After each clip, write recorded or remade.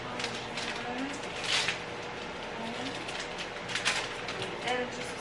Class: recorded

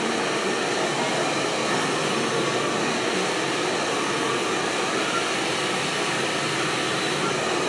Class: recorded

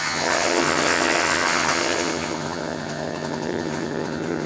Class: remade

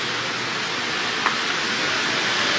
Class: recorded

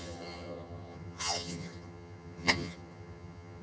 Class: remade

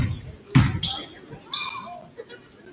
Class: recorded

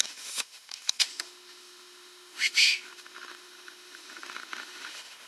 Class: remade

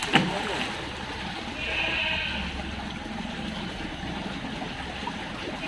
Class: recorded